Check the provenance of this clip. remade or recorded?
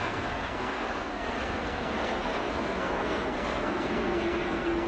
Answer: remade